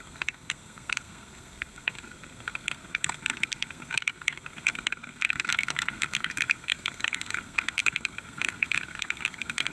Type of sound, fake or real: fake